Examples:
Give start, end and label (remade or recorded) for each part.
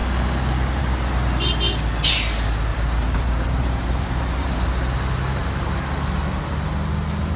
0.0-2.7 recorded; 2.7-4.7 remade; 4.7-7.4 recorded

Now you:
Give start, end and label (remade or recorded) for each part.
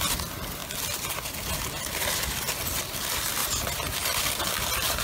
0.0-0.6 remade; 0.6-2.8 recorded; 2.8-3.4 remade; 3.4-4.2 recorded; 4.2-5.0 remade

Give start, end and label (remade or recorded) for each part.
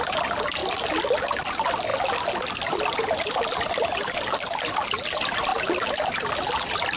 0.0-7.0 recorded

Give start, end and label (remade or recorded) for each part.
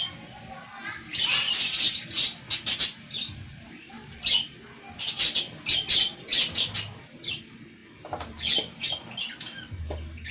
0.0-10.3 recorded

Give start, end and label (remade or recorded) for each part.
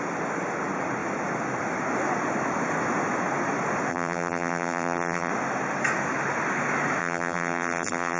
0.0-3.9 recorded; 3.9-5.3 remade; 5.3-7.0 recorded; 7.0-8.2 remade